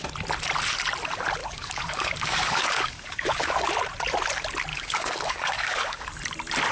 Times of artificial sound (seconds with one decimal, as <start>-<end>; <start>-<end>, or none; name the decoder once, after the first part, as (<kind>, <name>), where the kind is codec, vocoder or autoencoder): 1.4-3.7 (codec, DAC); 4.7-6.1